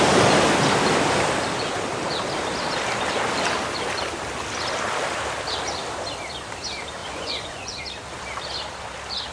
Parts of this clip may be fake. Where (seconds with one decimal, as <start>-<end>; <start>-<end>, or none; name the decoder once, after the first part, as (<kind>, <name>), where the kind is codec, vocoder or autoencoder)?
7.0-7.8 (vocoder, Vocos)